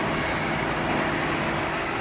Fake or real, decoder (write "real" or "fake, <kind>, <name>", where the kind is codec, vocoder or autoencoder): real